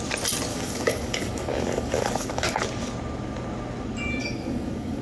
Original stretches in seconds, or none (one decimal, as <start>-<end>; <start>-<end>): 0.0-0.5; 2.6-4.2